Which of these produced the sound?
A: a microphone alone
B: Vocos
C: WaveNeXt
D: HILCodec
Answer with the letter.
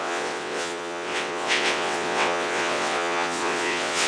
C